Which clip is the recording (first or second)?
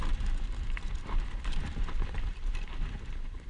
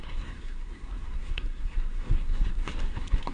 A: first